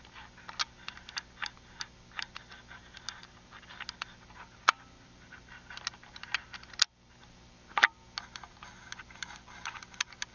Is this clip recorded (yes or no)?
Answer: yes